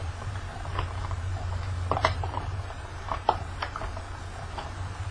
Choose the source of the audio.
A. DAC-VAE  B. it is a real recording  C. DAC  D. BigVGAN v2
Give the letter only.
D